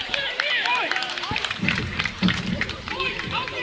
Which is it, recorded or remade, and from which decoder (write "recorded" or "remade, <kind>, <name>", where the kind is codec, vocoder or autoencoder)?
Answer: remade, vocoder, BigVGAN v2